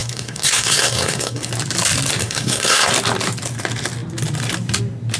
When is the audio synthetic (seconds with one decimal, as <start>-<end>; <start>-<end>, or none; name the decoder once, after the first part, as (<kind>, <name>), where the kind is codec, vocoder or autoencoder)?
0.0-1.5 (codec, SNAC); 2.2-2.9